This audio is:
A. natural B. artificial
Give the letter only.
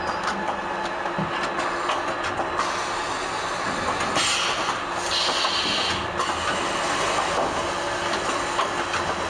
A